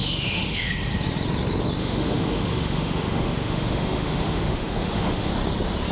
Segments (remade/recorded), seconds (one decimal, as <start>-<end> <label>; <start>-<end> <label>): 0.0-0.7 remade; 0.7-1.8 recorded; 1.8-5.3 remade; 5.3-5.9 recorded